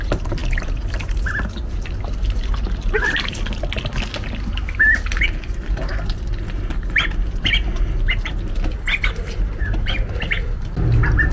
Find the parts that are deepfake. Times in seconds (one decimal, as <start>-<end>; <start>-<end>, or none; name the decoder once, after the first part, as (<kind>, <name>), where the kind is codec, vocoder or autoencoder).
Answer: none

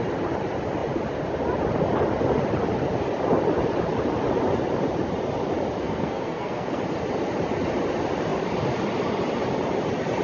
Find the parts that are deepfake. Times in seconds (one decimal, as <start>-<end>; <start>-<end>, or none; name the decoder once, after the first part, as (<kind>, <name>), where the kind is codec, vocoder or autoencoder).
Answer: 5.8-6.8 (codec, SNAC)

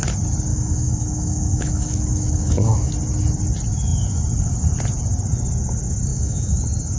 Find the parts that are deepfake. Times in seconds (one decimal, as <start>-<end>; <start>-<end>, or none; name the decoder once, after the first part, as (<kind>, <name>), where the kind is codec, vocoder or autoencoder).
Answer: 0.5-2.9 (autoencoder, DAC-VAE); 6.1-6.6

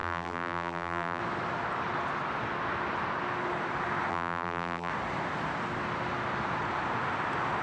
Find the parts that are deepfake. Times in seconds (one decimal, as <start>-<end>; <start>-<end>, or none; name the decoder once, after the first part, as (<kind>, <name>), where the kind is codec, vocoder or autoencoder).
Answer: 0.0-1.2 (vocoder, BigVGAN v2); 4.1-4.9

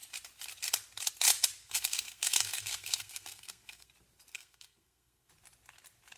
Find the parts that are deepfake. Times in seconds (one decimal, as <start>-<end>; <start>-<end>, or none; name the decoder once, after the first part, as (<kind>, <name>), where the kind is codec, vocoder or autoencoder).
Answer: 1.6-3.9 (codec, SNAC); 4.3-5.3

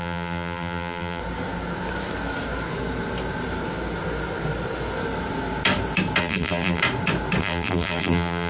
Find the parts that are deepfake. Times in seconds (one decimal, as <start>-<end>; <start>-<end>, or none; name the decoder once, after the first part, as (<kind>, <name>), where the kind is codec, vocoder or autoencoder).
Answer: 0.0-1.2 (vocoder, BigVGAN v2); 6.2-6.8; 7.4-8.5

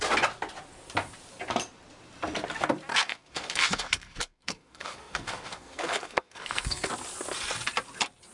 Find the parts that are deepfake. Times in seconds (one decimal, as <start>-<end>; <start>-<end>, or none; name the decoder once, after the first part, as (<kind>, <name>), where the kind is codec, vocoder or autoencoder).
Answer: 2.9-6.9 (codec, SNAC)